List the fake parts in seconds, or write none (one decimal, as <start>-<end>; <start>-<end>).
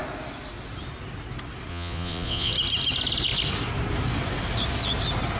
1.7-2.5